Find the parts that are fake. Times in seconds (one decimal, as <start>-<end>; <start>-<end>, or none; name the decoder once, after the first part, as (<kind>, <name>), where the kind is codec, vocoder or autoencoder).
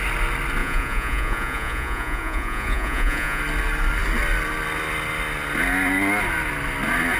0.6-3.4 (vocoder, Vocos)